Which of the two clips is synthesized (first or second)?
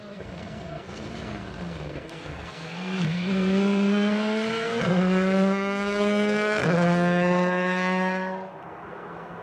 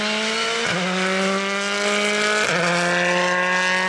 first